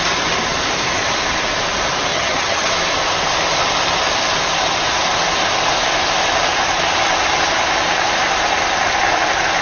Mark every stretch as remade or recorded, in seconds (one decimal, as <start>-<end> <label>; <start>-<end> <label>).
0.0-2.1 recorded; 2.1-2.7 remade; 2.7-9.6 recorded